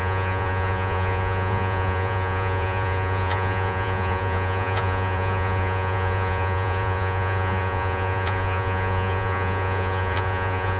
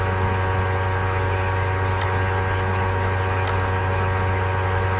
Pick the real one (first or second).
second